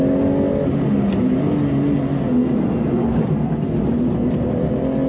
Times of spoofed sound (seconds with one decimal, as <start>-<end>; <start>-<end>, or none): none